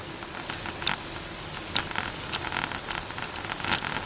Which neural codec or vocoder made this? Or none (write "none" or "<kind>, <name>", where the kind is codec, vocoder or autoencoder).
none